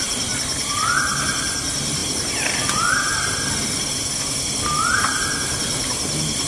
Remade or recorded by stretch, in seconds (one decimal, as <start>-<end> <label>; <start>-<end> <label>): 0.0-6.5 recorded